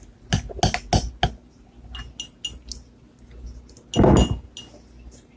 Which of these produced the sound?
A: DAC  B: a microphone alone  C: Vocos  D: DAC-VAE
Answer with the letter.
B